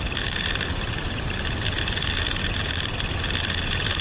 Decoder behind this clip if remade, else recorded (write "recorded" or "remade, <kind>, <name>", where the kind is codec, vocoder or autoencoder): recorded